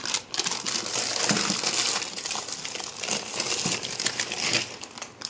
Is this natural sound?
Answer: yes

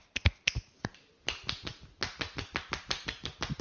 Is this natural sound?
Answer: yes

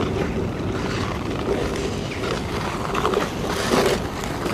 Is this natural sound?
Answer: yes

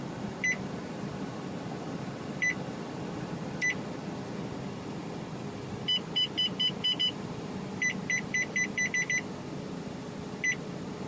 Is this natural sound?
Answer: no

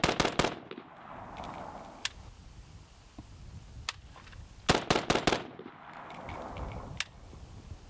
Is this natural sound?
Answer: yes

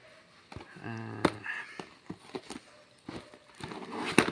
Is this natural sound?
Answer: yes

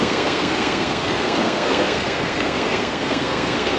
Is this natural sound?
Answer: no